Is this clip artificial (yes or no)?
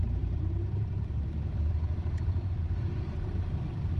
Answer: yes